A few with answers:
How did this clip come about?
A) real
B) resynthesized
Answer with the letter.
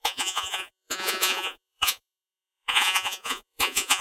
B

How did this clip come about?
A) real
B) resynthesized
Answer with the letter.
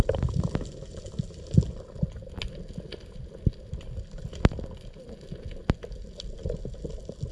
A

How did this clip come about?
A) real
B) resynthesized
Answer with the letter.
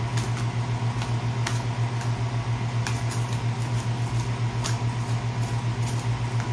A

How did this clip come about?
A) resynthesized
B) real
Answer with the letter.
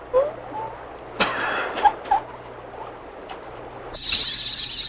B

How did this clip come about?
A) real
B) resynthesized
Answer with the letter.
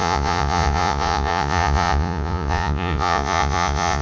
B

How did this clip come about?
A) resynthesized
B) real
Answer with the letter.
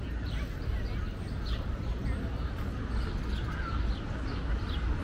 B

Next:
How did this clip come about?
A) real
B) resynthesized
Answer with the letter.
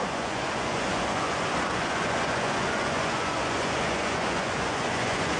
B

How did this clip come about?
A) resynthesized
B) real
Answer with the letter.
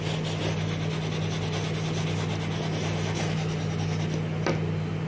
B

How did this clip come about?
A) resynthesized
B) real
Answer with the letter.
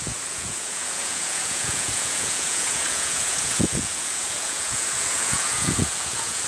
A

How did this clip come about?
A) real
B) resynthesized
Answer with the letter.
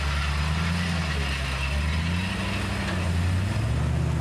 A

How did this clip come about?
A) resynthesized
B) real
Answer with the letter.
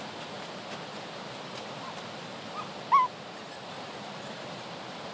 B